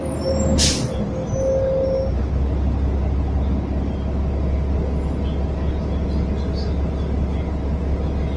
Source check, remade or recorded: recorded